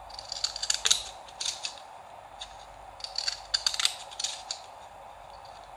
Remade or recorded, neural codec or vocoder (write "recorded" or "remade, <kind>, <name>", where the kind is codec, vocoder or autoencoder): recorded